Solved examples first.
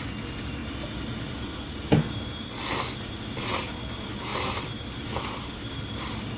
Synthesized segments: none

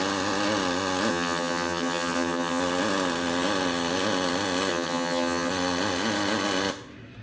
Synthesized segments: 1.1-2.6 (vocoder, HiFi-GAN); 4.7-5.5